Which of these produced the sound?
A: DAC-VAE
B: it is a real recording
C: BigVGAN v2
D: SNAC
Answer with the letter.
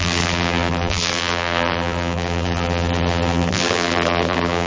C